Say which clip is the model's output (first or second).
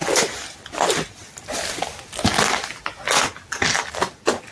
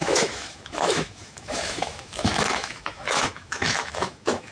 second